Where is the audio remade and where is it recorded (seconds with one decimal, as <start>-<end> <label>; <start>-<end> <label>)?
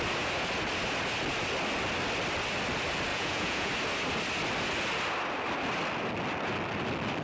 0.0-3.1 recorded; 3.1-3.7 remade; 3.7-7.2 recorded